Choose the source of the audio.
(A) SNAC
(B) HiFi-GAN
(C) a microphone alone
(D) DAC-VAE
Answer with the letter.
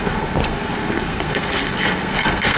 A